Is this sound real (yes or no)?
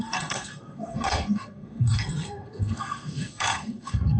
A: no